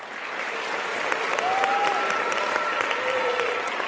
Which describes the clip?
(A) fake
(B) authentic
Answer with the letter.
B